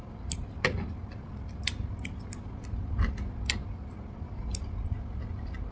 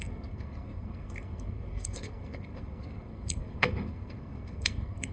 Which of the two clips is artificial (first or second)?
second